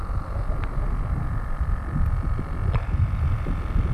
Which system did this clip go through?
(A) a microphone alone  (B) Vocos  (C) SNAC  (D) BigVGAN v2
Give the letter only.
A